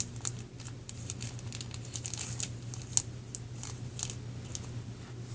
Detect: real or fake real